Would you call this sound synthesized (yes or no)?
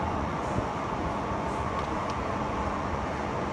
yes